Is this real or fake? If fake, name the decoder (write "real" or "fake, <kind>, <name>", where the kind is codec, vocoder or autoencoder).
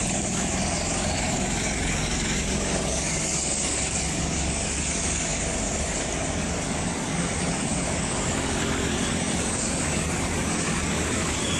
fake, codec, DAC